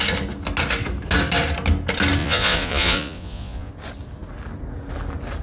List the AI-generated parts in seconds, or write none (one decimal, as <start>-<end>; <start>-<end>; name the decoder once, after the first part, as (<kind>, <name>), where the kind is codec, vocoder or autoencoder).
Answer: 2.2-3.7 (vocoder, Vocos)